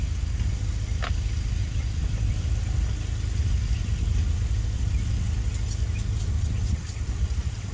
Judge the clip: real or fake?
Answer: real